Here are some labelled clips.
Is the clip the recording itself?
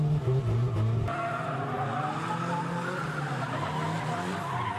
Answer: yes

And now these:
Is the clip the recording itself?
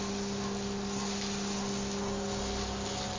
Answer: yes